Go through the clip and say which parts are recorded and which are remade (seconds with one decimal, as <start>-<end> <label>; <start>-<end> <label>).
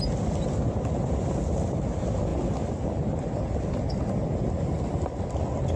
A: 0.0-5.8 recorded